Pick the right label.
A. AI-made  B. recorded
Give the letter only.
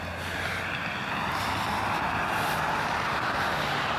B